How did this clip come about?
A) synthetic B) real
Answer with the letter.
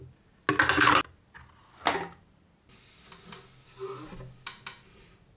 B